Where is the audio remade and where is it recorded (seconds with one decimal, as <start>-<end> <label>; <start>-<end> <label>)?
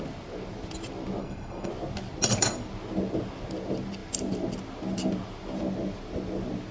0.0-1.2 recorded; 1.2-1.7 remade; 1.7-6.7 recorded